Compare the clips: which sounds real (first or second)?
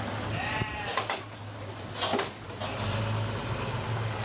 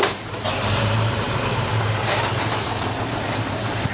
first